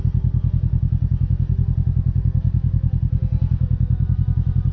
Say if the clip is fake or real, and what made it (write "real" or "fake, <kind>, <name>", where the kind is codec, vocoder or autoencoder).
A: real